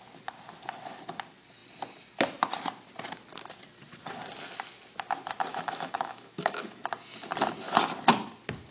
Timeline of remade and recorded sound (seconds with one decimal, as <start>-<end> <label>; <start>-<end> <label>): 0.0-5.5 recorded; 5.5-6.8 remade; 6.8-8.7 recorded